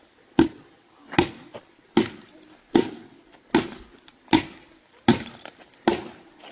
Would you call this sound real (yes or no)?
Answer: yes